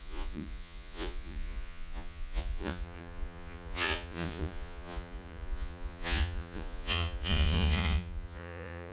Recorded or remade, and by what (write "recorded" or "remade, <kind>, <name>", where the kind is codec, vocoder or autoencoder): remade, vocoder, Vocos